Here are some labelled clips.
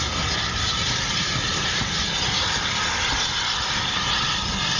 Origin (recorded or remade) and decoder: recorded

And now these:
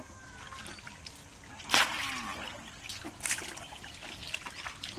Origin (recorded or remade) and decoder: recorded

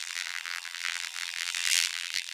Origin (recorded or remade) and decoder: remade, vocoder, BigVGAN v2